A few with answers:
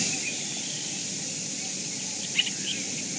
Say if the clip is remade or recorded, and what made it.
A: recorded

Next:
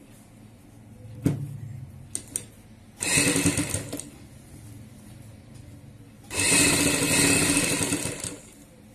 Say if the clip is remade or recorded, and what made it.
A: recorded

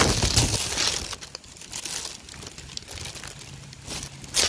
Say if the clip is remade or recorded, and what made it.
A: recorded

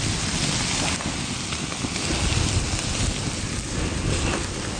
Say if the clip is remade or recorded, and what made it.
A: recorded